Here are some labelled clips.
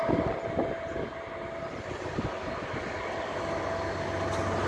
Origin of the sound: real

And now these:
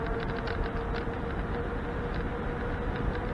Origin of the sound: real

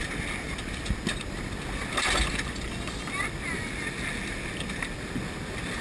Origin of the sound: real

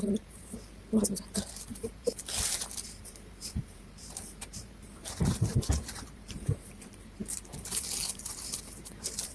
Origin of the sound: fake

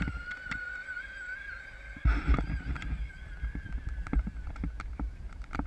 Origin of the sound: fake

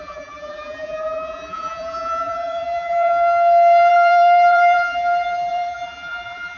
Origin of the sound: fake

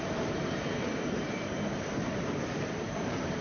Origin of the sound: fake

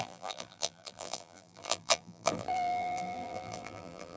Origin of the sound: fake